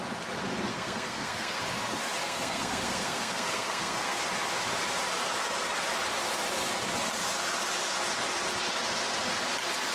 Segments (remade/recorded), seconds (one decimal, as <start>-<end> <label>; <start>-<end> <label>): 0.0-0.7 recorded; 0.7-1.6 remade; 1.6-2.2 recorded; 2.2-4.2 remade; 4.2-9.9 recorded